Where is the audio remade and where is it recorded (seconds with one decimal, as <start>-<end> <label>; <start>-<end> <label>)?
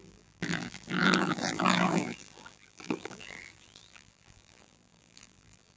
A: 0.0-5.8 remade